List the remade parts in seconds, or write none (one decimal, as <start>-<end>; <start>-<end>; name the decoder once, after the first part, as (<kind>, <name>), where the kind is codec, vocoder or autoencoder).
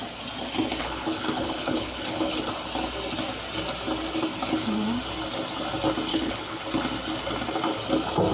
0.8-2.5 (codec, HILCodec); 6.1-6.6